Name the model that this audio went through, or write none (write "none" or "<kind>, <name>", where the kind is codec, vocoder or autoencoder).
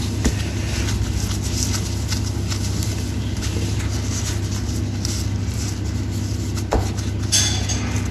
none